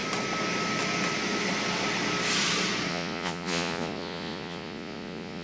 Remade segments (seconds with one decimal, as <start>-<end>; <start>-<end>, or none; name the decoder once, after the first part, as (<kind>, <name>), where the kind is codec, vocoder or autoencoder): 2.9-5.4 (vocoder, Vocos)